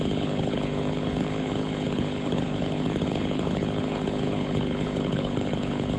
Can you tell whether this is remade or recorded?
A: remade